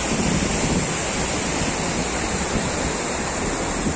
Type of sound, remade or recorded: recorded